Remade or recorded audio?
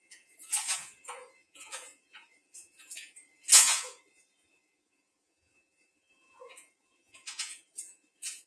remade